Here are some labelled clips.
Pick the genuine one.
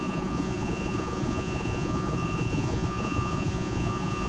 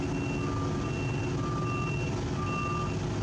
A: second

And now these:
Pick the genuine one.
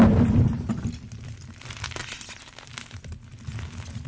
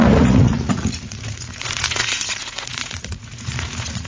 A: first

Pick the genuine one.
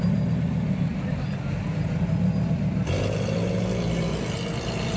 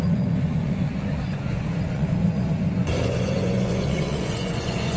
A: first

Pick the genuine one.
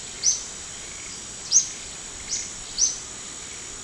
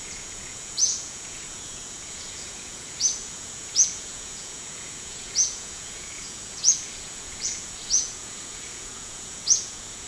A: first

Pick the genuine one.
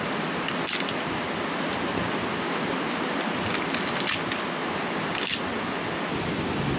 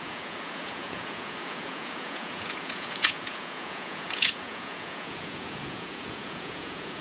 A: first